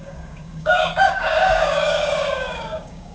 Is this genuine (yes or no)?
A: no